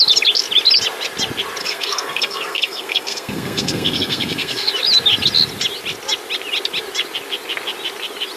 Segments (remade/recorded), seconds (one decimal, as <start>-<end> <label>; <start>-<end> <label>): 0.0-1.6 recorded; 1.6-4.7 remade; 4.7-8.4 recorded